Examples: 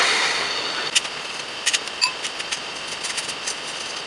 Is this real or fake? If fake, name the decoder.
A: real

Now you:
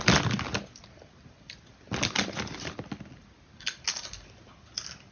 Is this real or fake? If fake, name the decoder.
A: real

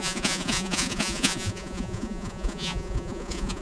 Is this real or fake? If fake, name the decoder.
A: fake, vocoder, Vocos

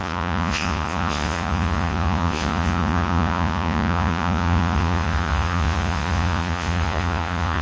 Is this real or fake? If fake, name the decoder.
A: fake, vocoder, Vocos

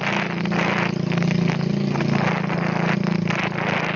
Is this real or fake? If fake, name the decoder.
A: real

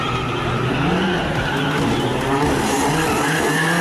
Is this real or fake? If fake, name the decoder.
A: real